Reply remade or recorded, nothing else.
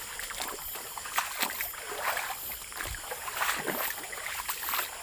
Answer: recorded